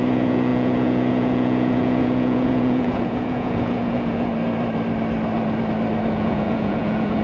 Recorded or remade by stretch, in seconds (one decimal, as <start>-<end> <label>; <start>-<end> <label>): 0.0-4.3 remade; 4.3-6.1 recorded; 6.1-7.2 remade